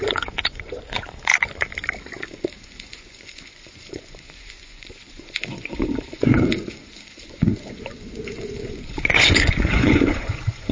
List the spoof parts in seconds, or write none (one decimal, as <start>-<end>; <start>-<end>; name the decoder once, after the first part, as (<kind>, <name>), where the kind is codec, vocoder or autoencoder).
0.0-1.3 (vocoder, Vocos); 2.5-10.7